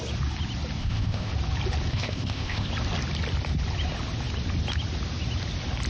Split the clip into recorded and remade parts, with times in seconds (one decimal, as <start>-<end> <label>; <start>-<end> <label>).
0.0-0.8 recorded; 0.8-1.3 remade; 1.3-1.9 recorded; 1.9-2.7 remade; 2.7-5.9 recorded